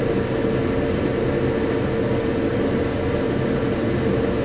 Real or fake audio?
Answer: real